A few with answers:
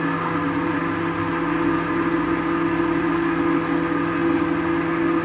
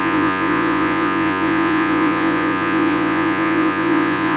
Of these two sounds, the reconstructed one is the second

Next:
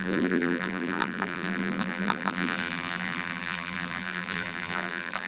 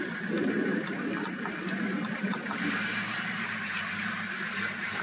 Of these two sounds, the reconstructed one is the first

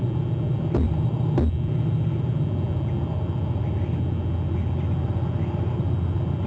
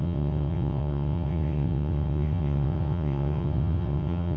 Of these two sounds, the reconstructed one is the second